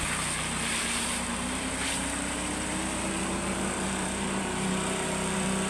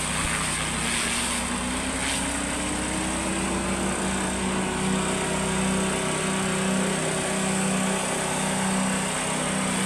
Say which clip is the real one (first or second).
second